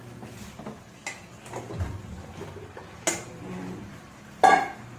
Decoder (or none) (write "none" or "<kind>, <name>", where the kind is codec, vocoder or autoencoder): none